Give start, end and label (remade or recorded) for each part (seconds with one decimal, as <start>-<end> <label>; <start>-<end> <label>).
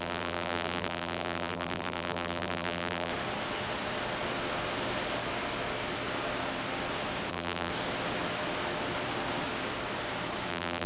0.0-3.1 remade; 3.1-7.3 recorded; 7.3-7.7 remade; 7.7-10.5 recorded; 10.5-10.9 remade